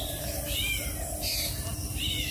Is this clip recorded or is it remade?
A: recorded